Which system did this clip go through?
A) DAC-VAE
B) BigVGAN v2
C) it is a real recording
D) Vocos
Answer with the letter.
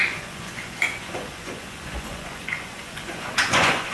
D